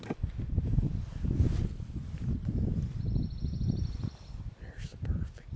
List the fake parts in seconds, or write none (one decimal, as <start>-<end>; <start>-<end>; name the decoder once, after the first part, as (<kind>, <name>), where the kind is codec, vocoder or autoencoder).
none